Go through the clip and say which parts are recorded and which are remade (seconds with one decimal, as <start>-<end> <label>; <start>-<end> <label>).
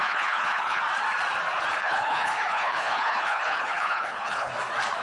0.0-0.8 remade; 0.8-1.8 recorded; 1.8-4.5 remade; 4.5-5.0 recorded